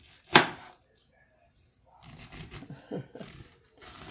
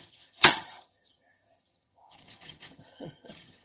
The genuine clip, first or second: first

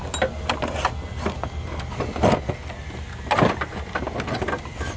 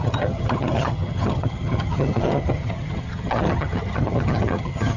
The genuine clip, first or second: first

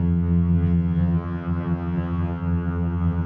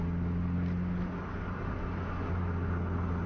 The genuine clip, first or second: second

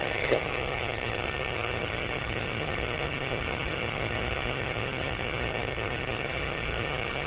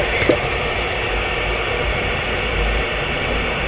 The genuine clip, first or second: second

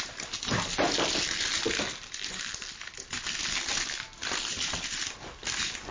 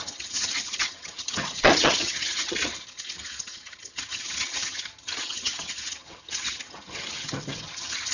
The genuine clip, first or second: first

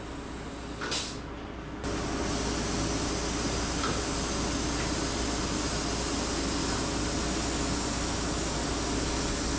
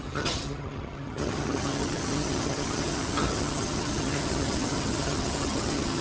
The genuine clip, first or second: first